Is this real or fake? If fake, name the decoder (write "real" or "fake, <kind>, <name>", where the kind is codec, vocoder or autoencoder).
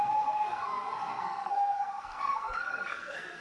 fake, codec, SNAC